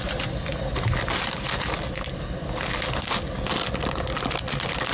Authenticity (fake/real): real